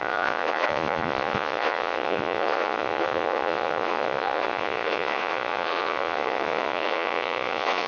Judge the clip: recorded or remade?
remade